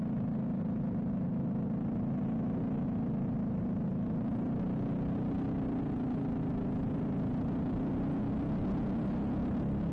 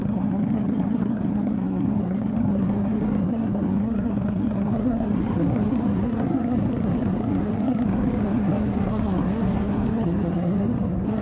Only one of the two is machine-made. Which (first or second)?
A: second